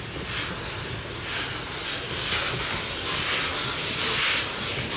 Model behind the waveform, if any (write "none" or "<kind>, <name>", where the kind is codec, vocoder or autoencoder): none